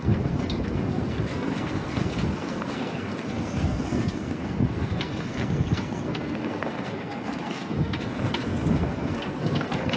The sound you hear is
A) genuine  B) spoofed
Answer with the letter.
B